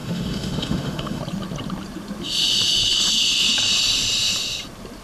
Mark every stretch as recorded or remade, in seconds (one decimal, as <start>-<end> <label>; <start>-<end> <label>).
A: 0.0-1.2 remade; 1.2-5.0 recorded